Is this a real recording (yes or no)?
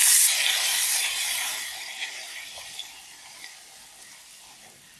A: no